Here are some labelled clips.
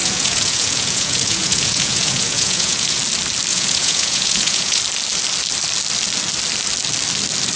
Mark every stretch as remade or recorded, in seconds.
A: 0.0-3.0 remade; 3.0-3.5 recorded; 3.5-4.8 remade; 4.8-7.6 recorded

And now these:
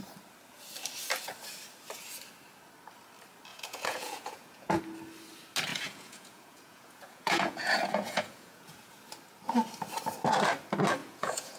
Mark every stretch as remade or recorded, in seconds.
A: 0.0-3.5 recorded; 3.5-4.8 remade; 4.8-5.7 recorded; 5.7-8.9 remade; 8.9-11.0 recorded; 11.0-11.6 remade